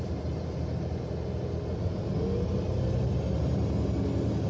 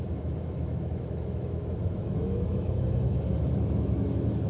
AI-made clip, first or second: second